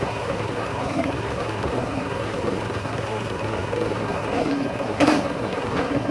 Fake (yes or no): yes